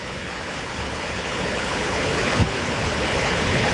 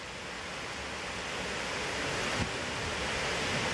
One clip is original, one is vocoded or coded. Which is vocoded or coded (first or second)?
first